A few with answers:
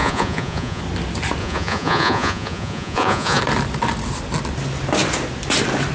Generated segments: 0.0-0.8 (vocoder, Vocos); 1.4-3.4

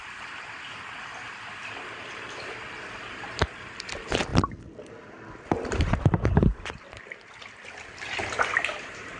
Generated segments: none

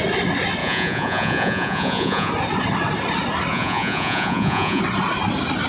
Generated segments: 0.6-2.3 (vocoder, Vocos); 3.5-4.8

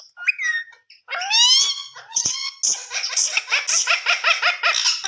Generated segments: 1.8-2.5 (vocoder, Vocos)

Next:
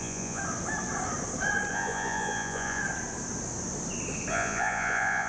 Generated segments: 0.0-0.4 (vocoder, Vocos); 1.7-2.8; 4.3-5.3

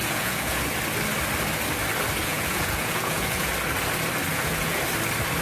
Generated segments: 0.0-0.6 (vocoder, Vocos); 2.2-3.5; 4.3-4.8

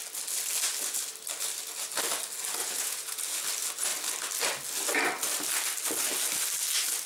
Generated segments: 2.6-3.2 (vocoder, Vocos)

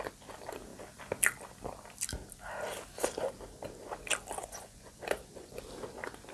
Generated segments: 4.4-5.6 (vocoder, Vocos)